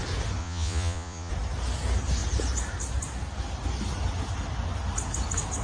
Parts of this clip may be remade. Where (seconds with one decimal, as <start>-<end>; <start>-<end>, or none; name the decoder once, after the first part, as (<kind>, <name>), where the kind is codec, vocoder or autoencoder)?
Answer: 0.4-1.3 (vocoder, Vocos)